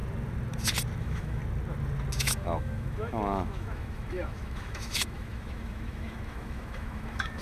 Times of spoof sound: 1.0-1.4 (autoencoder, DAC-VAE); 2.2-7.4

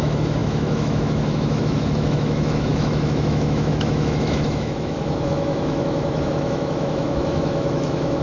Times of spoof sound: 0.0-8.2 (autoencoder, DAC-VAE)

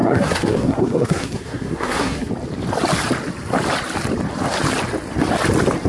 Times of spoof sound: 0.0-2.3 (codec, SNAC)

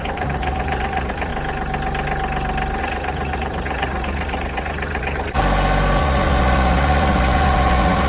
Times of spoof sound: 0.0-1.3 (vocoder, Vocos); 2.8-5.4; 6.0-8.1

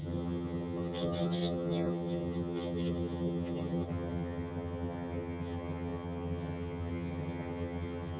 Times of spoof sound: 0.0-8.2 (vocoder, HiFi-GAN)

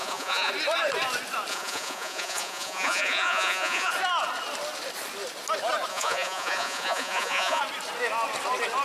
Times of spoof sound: 0.0-0.5 (vocoder, Vocos); 1.5-3.9; 5.9-7.6

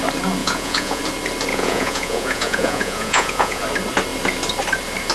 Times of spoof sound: 0.4-1.0 (vocoder, Vocos); 1.5-3.6